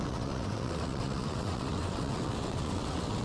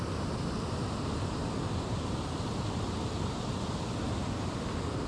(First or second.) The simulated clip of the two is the first